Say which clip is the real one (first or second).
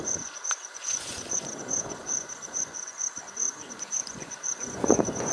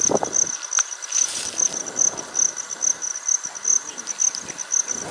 second